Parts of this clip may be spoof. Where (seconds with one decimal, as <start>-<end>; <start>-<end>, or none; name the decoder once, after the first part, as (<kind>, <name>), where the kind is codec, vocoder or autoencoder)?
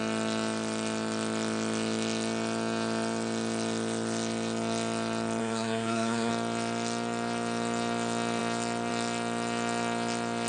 5.4-6.3 (codec, SNAC)